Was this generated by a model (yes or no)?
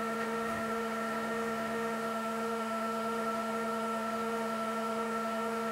yes